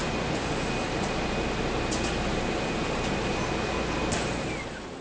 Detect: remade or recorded recorded